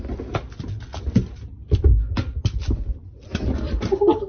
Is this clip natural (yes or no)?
yes